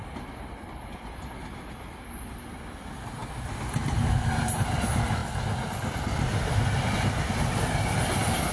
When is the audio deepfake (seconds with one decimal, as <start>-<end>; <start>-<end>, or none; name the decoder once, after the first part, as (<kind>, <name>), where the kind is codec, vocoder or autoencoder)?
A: none